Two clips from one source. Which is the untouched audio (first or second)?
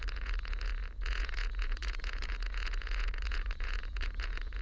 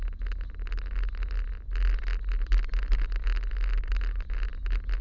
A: second